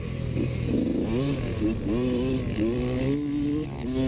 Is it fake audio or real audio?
real